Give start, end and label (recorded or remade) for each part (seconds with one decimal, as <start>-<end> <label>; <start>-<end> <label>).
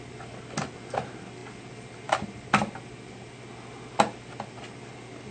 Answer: 0.0-5.3 recorded